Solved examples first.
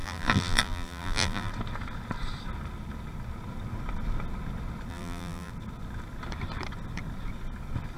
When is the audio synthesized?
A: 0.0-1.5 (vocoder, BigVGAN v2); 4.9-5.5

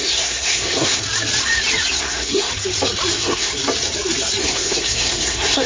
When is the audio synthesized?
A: 0.0-1.0 (codec, SNAC); 2.0-2.5; 3.1-3.5; 4.4-5.7